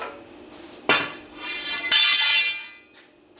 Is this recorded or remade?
recorded